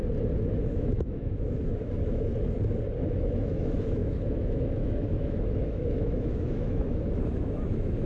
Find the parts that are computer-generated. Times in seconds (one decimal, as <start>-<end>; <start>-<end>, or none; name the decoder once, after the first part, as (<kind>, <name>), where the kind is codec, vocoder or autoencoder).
0.5-2.3 (autoencoder, DAC-VAE); 3.0-8.1